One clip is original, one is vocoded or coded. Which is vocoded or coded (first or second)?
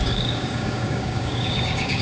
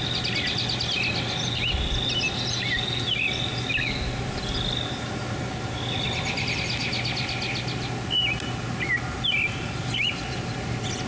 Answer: first